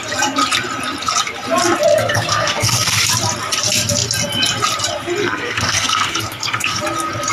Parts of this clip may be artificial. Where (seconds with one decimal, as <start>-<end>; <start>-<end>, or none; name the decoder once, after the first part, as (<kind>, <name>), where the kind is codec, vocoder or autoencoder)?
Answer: 1.9-3.1 (codec, SNAC); 5.2-6.8